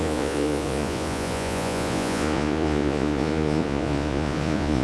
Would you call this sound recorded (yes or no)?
no